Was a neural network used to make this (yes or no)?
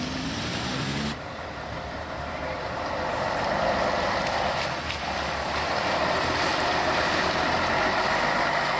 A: yes